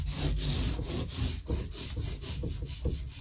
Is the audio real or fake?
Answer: real